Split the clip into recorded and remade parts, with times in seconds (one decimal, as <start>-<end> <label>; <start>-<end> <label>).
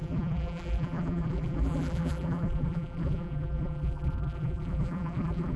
0.0-5.6 remade